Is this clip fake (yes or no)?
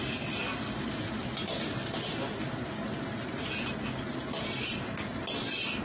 no